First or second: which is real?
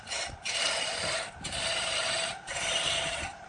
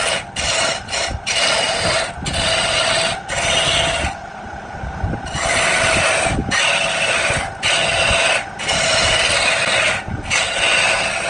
second